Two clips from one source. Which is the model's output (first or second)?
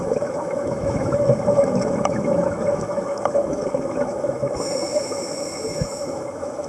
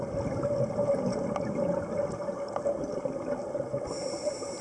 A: first